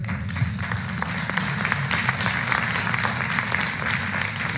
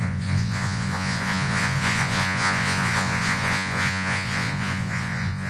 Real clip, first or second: first